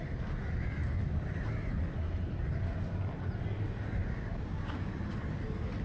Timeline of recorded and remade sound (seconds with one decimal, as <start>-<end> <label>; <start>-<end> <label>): 0.0-4.0 recorded; 4.0-4.9 remade; 4.9-5.8 recorded